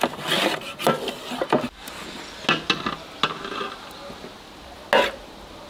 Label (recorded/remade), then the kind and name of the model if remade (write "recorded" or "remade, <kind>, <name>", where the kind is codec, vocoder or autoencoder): recorded